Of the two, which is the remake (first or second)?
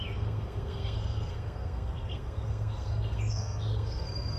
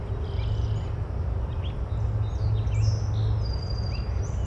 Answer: first